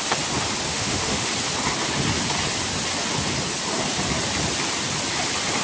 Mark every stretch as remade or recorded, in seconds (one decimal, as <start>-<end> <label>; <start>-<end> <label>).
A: 0.0-0.7 recorded; 0.7-1.3 remade; 1.3-5.6 recorded